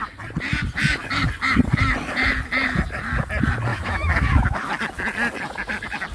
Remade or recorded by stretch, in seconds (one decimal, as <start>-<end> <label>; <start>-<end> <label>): 0.0-3.7 recorded; 3.7-4.7 remade; 4.7-6.1 recorded